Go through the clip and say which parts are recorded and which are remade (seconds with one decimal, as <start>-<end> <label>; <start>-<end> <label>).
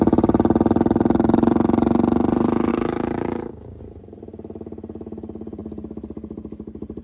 0.0-2.7 recorded; 2.7-3.8 remade; 3.8-7.0 recorded